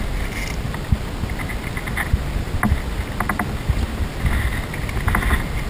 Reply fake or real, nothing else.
real